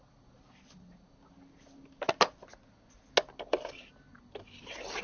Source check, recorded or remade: recorded